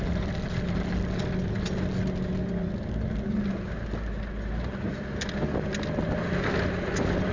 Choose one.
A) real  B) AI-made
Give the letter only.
A